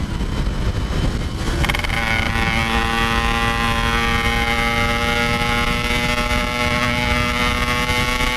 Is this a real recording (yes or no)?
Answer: yes